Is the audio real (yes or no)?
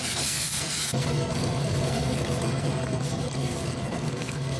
no